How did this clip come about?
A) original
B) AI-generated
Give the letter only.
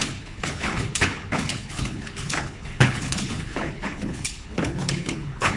B